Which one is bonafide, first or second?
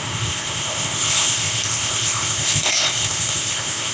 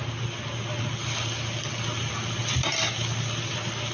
second